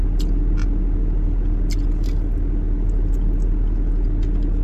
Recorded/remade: recorded